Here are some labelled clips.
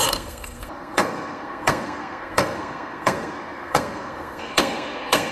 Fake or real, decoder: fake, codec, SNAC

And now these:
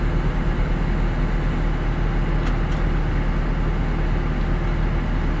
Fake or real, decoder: real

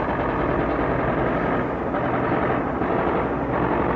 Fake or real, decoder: real